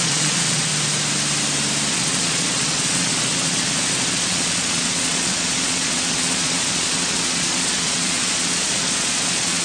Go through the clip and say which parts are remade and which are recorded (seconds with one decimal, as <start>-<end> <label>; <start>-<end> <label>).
0.0-0.7 remade; 0.7-1.9 recorded; 1.9-9.6 remade

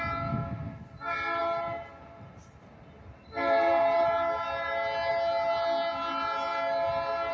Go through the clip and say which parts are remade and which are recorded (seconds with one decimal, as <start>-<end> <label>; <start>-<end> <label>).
0.0-7.3 recorded